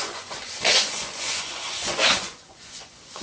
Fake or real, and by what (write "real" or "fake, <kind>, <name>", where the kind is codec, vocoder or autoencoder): fake, vocoder, Vocos